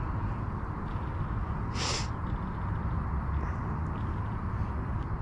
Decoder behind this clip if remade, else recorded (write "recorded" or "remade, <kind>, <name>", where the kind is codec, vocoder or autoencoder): recorded